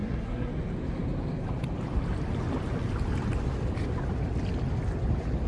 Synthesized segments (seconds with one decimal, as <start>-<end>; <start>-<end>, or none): 0.0-0.5